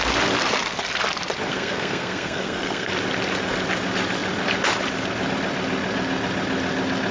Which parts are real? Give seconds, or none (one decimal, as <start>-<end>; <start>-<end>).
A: 0.0-1.5; 2.9-7.1